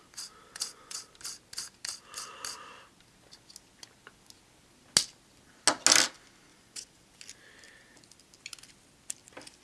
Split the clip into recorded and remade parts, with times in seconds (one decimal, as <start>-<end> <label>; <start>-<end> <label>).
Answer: 0.0-0.5 recorded; 0.5-1.0 remade; 1.0-6.5 recorded; 6.5-7.1 remade; 7.1-9.6 recorded